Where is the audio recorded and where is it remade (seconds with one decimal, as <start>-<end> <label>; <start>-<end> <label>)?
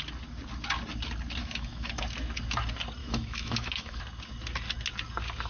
0.0-1.4 recorded; 1.4-2.0 remade; 2.0-3.0 recorded; 3.0-4.0 remade; 4.0-5.5 recorded